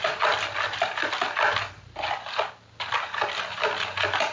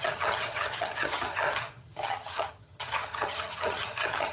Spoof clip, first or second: second